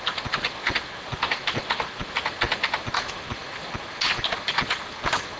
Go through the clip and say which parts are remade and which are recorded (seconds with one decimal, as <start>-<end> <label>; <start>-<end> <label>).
0.0-5.4 recorded